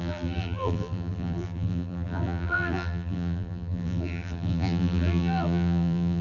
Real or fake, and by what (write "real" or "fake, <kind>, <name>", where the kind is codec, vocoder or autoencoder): fake, vocoder, BigVGAN v2